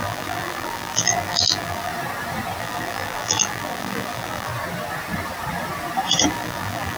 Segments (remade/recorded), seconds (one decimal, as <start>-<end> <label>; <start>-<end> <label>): 0.0-1.9 remade; 1.9-2.6 recorded; 2.6-4.5 remade; 4.5-6.3 recorded; 6.3-7.0 remade